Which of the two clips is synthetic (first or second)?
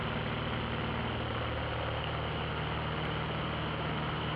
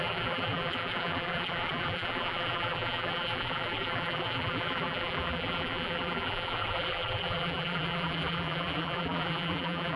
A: second